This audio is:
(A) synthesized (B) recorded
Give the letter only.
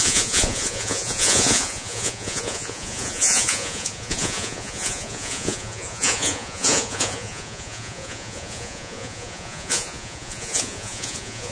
A